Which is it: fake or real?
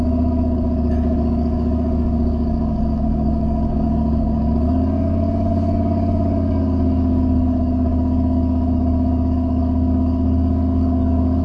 fake